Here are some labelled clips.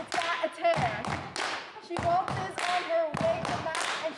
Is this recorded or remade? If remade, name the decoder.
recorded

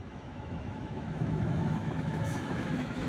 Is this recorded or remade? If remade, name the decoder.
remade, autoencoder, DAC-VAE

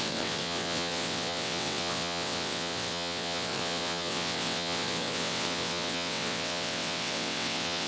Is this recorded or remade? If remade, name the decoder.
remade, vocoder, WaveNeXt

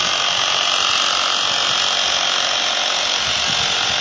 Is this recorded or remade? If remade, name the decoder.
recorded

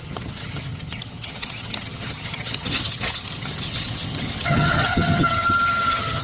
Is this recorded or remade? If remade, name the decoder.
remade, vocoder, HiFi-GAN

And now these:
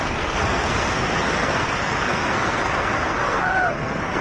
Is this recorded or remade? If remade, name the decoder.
remade, codec, SNAC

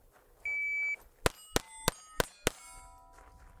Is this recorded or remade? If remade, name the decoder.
recorded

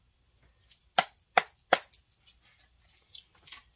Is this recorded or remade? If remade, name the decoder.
recorded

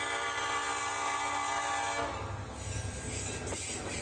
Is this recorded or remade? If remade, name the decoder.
recorded